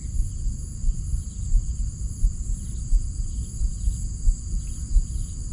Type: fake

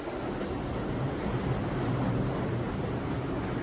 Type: real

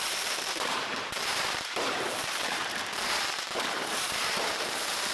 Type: fake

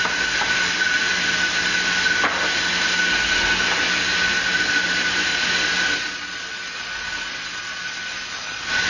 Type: real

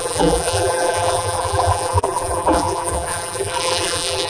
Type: fake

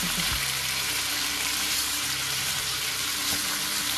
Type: fake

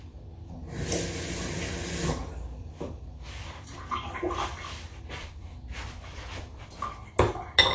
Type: real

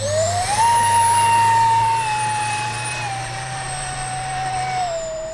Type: fake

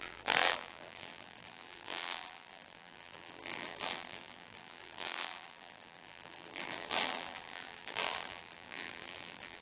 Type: fake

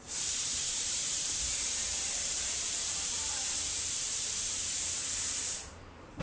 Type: fake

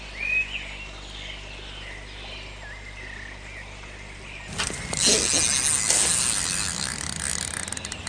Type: real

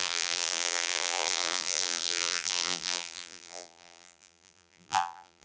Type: fake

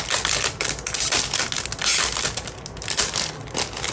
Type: real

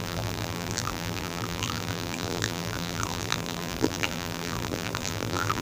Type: fake